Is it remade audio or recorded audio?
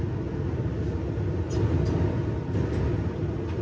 recorded